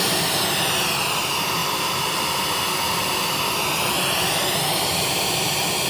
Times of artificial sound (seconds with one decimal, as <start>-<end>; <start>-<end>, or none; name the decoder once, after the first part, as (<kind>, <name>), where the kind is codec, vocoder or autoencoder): none